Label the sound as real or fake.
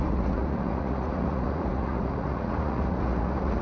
fake